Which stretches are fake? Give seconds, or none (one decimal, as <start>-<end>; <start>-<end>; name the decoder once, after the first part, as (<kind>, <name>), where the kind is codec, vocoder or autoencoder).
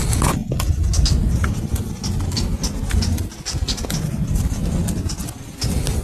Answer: none